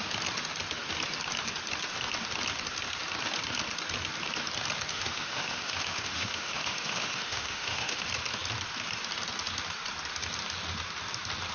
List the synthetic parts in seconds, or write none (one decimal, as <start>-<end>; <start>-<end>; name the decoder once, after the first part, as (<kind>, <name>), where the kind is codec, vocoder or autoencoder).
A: 4.9-8.0 (autoencoder, DAC-VAE)